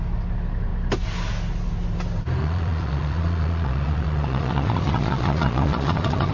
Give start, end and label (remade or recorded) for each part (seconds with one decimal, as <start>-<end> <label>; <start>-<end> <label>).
0.0-2.4 recorded; 2.4-6.3 remade